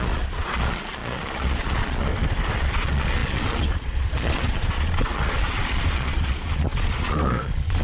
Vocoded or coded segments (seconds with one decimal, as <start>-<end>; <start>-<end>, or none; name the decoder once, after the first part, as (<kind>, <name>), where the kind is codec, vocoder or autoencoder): 0.0-2.1 (vocoder, Vocos); 2.6-7.8